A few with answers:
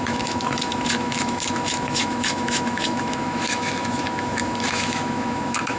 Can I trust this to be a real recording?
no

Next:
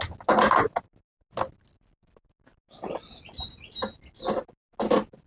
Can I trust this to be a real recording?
yes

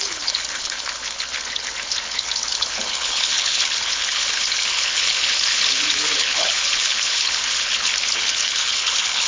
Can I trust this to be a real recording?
no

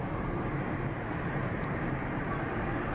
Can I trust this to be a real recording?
no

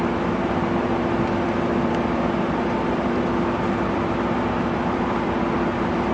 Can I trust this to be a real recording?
no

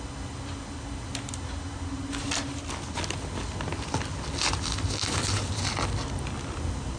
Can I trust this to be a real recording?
yes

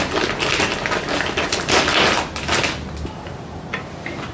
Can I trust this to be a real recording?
yes